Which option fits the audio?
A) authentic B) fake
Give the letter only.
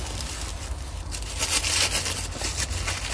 A